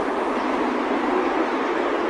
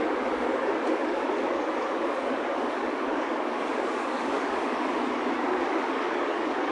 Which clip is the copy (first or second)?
second